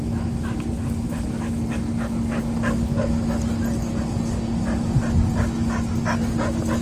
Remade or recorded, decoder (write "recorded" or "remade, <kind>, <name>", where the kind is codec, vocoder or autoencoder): recorded